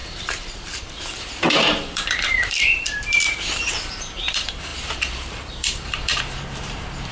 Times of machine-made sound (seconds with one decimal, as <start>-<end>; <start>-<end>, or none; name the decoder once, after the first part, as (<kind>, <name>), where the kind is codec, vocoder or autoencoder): 0.0-7.1 (vocoder, BigVGAN v2)

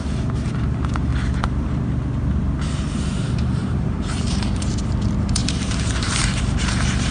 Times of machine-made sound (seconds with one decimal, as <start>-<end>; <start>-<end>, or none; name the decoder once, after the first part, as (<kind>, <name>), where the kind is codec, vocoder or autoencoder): 0.0-1.1 (vocoder, BigVGAN v2); 2.6-7.1

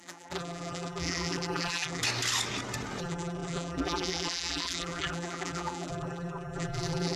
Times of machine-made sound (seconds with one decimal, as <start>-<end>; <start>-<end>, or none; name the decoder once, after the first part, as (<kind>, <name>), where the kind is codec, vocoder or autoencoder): 0.0-2.0 (vocoder, BigVGAN v2); 3.0-7.2

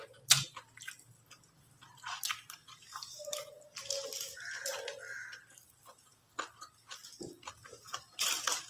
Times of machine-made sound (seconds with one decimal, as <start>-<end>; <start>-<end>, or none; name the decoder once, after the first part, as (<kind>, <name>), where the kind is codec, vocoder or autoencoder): 2.6-3.8 (vocoder, BigVGAN v2); 6.1-8.7

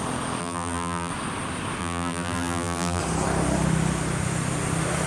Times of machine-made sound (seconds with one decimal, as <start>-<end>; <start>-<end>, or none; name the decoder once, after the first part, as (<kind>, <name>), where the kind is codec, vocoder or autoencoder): 0.4-1.1 (vocoder, BigVGAN v2); 1.8-3.0

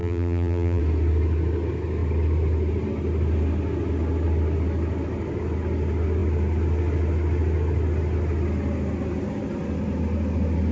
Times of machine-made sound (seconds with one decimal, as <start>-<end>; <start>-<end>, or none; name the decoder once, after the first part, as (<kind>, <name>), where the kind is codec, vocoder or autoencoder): 0.0-0.8 (vocoder, BigVGAN v2)

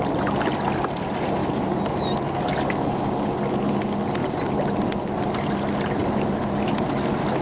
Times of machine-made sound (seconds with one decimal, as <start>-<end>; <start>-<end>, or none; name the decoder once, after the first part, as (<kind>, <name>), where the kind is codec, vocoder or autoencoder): 1.4-2.1 (vocoder, BigVGAN v2); 4.2-4.8; 6.0-6.9

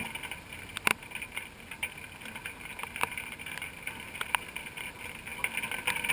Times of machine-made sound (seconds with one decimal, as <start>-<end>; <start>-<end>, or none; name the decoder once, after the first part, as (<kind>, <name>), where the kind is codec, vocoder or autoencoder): none